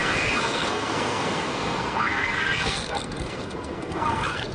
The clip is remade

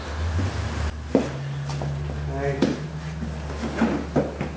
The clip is recorded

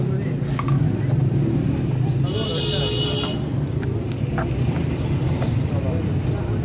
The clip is recorded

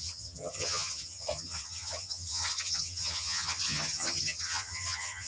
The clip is remade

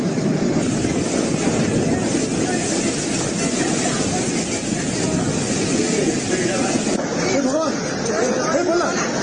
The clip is recorded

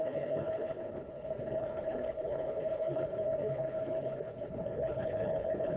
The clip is remade